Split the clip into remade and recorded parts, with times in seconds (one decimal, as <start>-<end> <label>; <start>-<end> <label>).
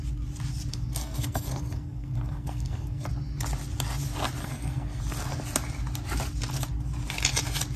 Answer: 0.0-0.7 recorded; 0.7-3.1 remade; 3.1-4.4 recorded; 4.4-5.0 remade; 5.0-7.8 recorded